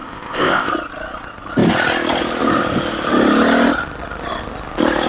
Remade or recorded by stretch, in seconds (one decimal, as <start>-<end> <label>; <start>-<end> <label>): 0.0-0.7 remade; 0.7-5.1 recorded